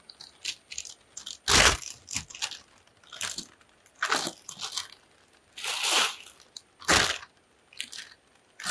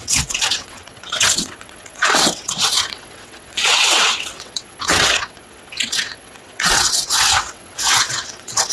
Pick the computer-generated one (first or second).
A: second